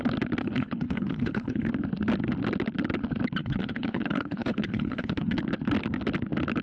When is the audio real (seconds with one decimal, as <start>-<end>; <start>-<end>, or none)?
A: 0.0-0.4; 1.7-3.4; 5.4-6.6